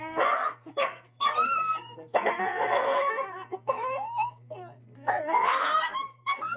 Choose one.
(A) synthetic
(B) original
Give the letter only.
A